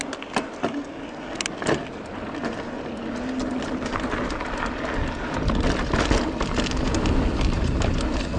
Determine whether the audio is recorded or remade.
recorded